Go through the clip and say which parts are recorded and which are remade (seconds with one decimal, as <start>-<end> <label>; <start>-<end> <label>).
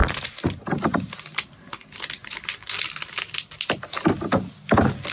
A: 0.0-5.1 recorded